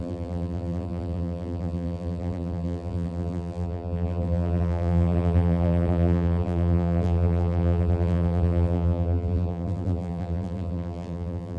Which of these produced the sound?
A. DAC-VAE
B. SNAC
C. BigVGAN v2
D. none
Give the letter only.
C